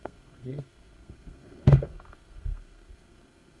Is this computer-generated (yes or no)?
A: yes